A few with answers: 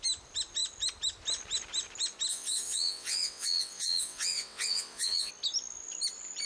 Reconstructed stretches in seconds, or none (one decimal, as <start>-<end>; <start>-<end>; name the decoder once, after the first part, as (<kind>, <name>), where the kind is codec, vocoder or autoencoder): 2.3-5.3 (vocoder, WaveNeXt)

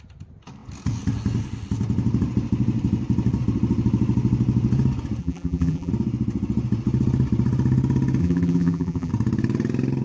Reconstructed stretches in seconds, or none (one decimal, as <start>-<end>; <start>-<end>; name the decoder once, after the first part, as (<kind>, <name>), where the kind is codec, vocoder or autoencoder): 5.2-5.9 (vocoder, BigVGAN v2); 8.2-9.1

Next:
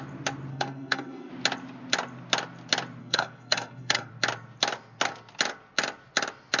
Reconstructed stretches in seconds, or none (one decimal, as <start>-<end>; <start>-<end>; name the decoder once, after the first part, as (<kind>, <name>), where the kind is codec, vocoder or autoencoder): 0.5-1.3 (codec, SNAC); 3.0-4.1